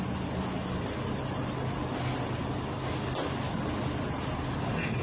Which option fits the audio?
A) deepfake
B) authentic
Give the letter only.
B